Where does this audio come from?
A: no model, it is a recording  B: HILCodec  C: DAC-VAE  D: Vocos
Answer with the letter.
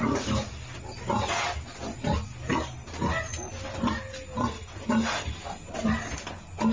A